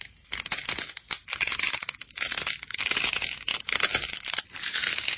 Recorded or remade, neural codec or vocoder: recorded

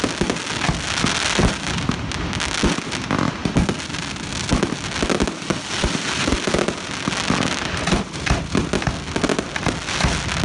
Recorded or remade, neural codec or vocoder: recorded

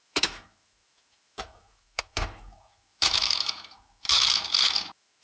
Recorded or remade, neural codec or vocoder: remade, autoencoder, DAC-VAE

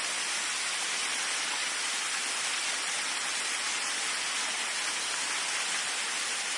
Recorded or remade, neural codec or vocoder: recorded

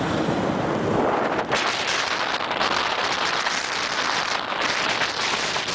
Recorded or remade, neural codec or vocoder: recorded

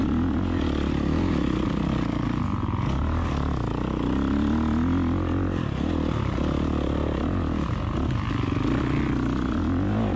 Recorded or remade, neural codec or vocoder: recorded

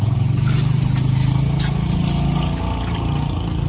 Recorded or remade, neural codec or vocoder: recorded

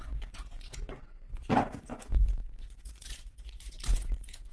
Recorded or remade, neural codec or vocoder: remade, vocoder, Vocos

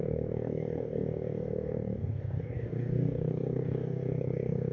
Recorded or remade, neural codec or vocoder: remade, codec, DAC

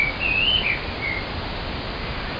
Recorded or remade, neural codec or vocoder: recorded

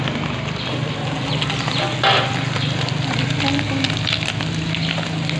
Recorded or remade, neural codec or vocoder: recorded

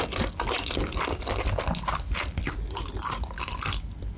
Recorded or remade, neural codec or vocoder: recorded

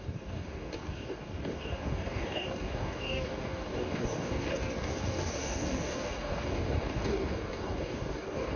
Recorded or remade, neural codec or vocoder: remade, codec, DAC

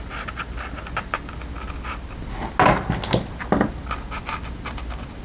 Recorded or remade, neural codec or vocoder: recorded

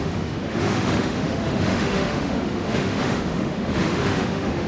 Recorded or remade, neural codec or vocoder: remade, autoencoder, DAC-VAE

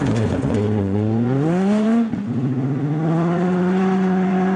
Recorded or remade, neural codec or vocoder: remade, vocoder, Vocos